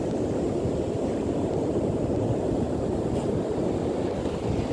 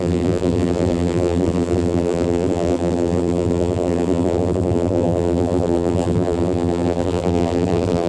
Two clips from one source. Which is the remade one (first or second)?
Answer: second